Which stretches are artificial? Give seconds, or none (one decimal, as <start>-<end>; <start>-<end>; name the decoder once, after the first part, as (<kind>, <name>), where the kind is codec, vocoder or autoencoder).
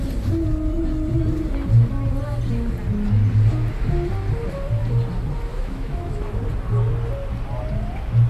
5.5-6.4 (autoencoder, DAC-VAE)